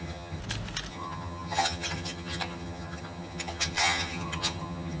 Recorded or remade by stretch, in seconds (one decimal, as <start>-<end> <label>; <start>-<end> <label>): 0.0-0.4 remade; 0.4-0.9 recorded; 0.9-5.0 remade